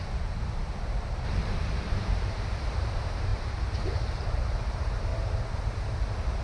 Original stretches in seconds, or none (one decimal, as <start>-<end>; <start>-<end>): 5.1-6.0